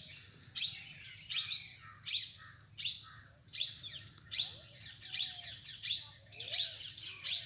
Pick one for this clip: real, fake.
real